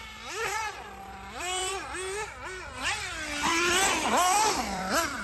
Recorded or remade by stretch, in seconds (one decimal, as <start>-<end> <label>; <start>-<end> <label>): 0.0-1.7 remade; 1.7-2.6 recorded; 2.6-3.5 remade; 3.5-4.1 recorded; 4.1-5.2 remade